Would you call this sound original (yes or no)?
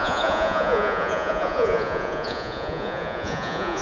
no